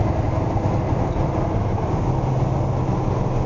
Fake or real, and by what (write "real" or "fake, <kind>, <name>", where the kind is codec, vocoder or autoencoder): real